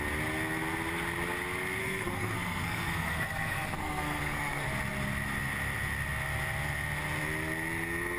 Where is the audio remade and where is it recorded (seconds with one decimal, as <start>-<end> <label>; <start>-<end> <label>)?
0.0-1.8 recorded; 1.8-4.7 remade; 4.7-8.2 recorded